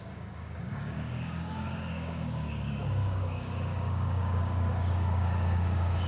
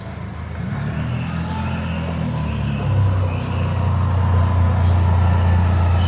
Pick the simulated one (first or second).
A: first